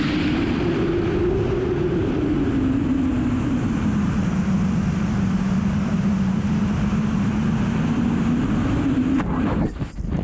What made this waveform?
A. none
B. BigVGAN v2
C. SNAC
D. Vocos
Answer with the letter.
A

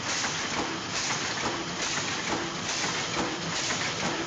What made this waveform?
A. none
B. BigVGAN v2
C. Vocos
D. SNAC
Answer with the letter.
B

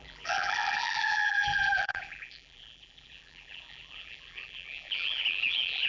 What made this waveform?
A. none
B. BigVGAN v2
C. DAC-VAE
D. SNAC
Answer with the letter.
B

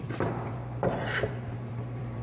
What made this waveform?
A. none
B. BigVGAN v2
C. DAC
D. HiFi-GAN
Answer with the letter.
B